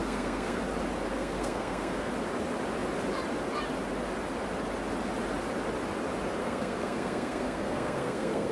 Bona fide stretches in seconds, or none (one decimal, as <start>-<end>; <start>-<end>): 0.6-1.1; 2.1-6.4